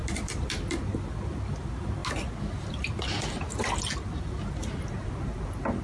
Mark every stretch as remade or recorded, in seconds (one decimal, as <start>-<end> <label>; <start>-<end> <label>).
0.0-5.8 recorded